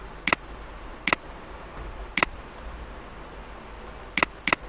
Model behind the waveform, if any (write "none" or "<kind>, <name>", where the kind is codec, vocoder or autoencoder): none